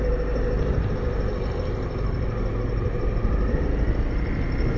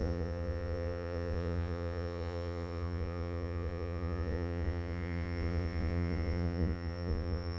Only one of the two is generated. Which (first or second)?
second